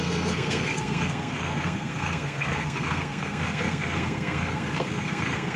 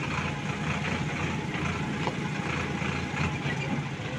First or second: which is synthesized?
first